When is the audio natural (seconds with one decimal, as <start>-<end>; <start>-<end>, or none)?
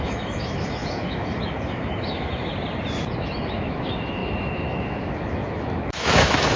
2.5-3.2